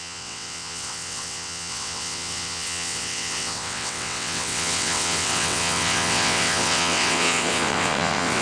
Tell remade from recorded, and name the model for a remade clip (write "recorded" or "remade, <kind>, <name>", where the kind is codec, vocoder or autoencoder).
remade, vocoder, WaveNeXt